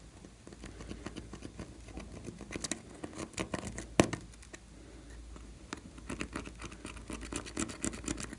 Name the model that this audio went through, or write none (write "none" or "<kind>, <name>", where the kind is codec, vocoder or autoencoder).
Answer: none